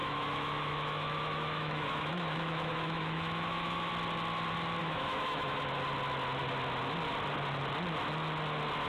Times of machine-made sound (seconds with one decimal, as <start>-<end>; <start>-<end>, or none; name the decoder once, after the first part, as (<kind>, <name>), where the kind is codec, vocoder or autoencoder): 0.0-3.9 (autoencoder, DAC-VAE); 4.8-5.6